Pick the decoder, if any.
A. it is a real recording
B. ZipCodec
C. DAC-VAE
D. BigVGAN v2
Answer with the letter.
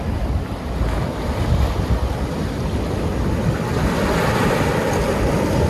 A